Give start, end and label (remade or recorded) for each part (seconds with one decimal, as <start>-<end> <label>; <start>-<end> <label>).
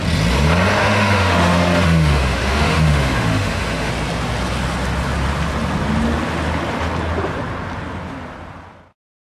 0.0-0.8 recorded; 0.8-3.9 remade; 3.9-9.3 recorded